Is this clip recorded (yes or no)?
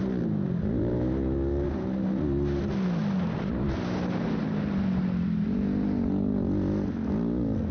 yes